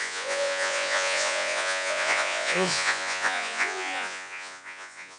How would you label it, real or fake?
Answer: fake